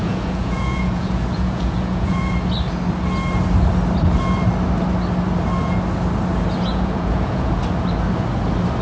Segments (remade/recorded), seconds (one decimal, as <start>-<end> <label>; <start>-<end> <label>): 0.0-2.3 remade; 2.3-6.7 recorded; 6.7-7.6 remade; 7.6-8.8 recorded